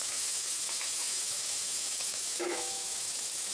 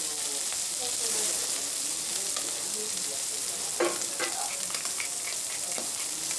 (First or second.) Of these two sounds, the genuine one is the second